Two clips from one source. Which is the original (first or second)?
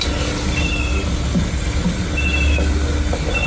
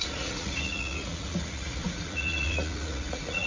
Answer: first